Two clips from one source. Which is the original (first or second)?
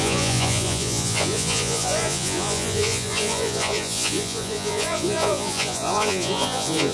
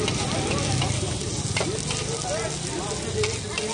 second